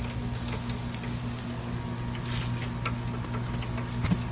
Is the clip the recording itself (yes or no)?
yes